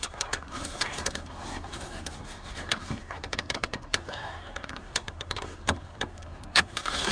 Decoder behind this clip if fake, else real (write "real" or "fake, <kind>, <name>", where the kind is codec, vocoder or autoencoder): fake, codec, SNAC